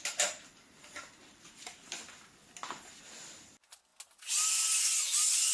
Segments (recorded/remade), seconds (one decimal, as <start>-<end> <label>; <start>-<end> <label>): 0.0-1.2 recorded; 1.2-2.3 remade; 2.3-5.5 recorded